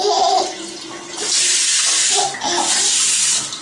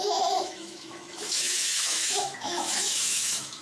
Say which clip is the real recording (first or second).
first